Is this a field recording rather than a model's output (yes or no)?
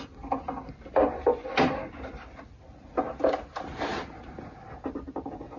yes